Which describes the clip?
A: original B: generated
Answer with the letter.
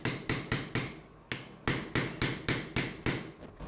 A